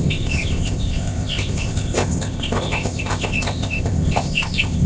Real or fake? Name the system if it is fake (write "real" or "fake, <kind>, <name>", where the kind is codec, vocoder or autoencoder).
fake, codec, ZipCodec